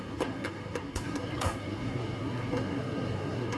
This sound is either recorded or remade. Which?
remade